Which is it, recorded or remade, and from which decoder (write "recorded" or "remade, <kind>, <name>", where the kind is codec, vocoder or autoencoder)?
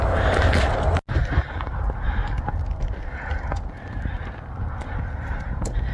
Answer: recorded